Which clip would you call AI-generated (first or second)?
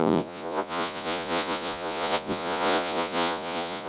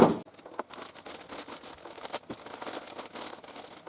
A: first